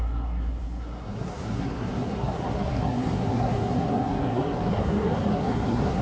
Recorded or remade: remade